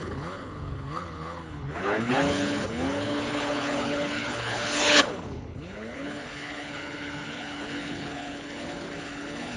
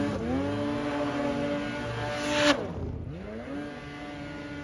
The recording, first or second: second